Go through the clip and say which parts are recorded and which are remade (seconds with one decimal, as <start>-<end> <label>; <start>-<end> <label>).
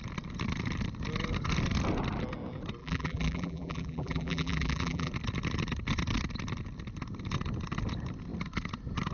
0.0-2.8 recorded; 2.8-5.1 remade; 5.1-9.1 recorded